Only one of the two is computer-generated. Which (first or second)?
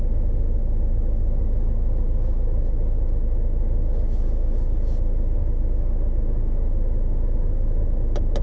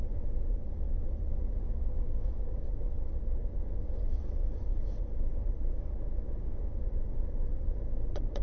second